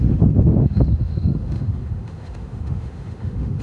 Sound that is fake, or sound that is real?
fake